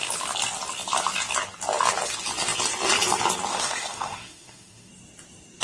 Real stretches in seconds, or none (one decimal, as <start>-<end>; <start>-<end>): 0.0-3.5; 4.9-5.6